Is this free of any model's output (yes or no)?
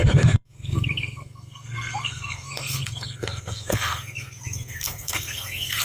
no